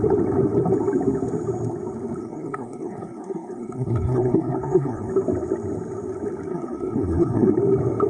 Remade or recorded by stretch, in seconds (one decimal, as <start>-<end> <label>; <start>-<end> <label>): 0.0-2.2 recorded; 2.2-5.1 remade; 5.1-6.5 recorded; 6.5-7.5 remade; 7.5-8.1 recorded